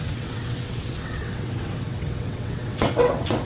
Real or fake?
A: fake